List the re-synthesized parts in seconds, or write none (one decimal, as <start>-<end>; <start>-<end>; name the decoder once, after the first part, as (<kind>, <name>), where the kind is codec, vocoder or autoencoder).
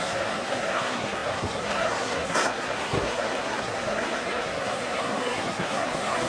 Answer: 0.0-6.3 (codec, SNAC)